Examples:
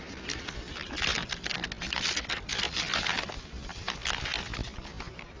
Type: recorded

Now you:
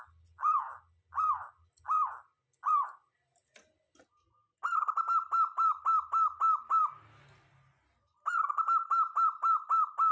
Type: recorded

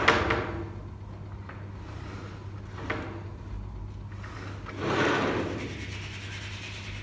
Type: recorded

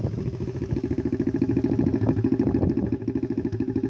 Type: remade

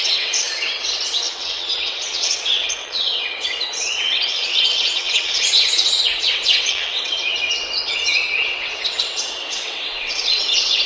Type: remade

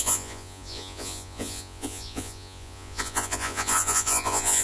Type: remade